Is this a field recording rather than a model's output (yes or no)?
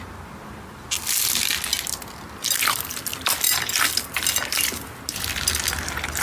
yes